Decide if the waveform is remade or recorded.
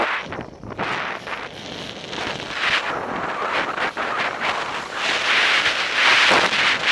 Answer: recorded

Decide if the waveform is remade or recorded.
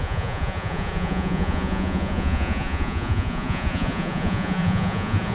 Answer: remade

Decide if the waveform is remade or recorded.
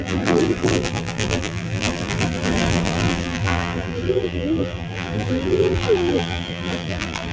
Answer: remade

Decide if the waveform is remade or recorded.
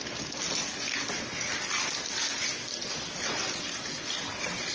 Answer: recorded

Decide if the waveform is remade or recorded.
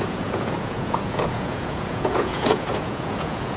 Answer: remade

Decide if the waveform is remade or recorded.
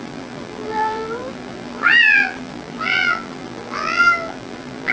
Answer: remade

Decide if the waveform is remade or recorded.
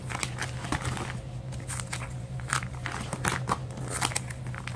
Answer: recorded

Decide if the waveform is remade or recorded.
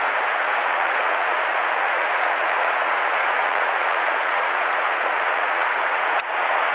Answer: remade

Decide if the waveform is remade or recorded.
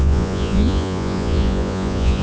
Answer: remade